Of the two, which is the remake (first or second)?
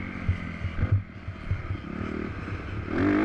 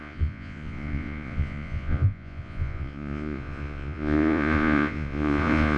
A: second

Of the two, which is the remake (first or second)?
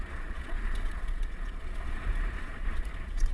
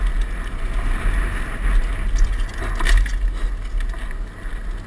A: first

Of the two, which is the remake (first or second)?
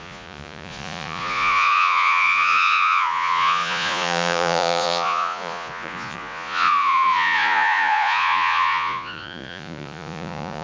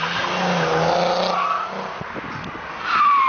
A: first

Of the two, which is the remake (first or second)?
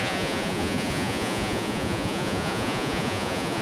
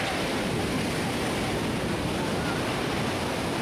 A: first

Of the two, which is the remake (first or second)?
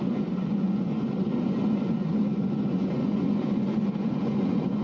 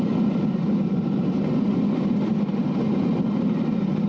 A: first